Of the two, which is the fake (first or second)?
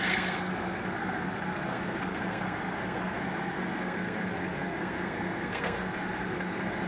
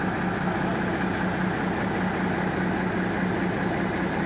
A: first